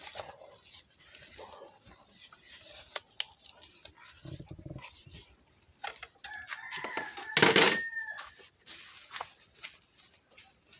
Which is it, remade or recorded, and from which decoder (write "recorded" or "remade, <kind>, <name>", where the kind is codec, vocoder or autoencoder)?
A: recorded